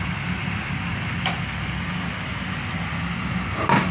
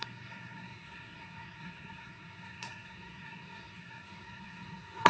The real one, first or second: first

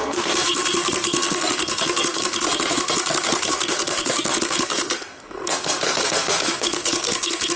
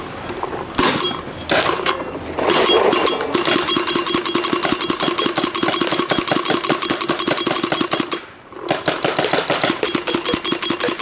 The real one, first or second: second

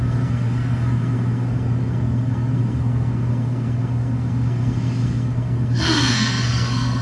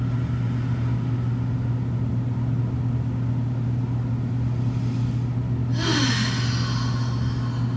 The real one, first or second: second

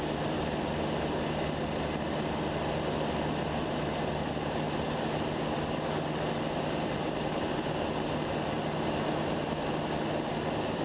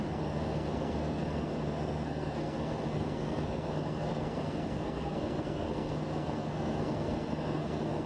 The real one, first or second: first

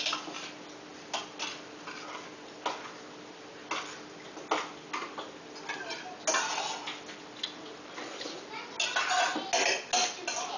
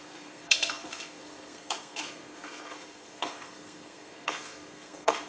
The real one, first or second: first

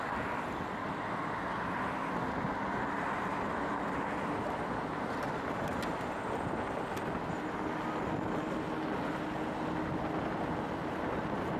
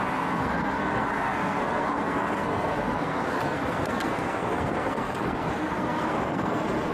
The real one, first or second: first